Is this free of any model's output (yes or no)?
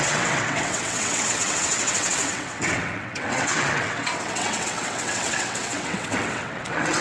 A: no